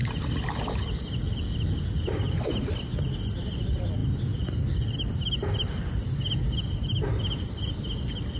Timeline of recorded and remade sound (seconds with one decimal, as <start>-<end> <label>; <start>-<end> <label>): 0.0-8.4 recorded